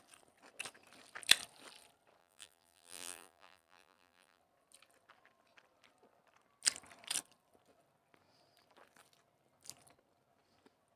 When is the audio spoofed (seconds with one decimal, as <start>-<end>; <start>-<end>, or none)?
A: 2.2-4.4